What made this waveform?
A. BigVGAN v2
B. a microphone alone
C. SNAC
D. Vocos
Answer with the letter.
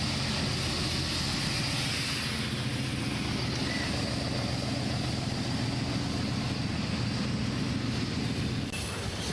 B